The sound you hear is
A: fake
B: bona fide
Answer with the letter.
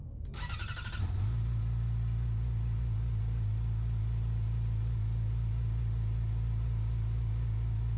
B